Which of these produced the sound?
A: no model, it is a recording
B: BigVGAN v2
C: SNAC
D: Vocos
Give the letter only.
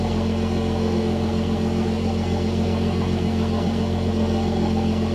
C